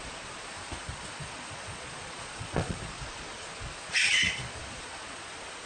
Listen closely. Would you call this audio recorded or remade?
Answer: remade